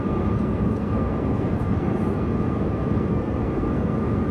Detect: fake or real fake